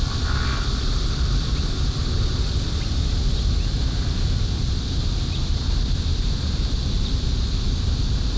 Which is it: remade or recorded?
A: recorded